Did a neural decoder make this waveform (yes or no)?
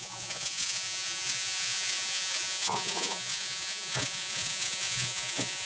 yes